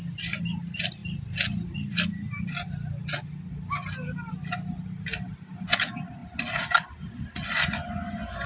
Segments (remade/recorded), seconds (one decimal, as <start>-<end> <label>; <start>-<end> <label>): 0.0-8.4 recorded